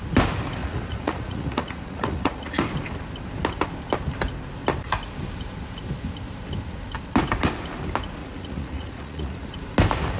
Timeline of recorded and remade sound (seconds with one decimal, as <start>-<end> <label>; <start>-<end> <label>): 0.0-0.6 recorded; 0.6-2.6 remade; 2.6-8.2 recorded; 8.2-9.5 remade; 9.5-10.2 recorded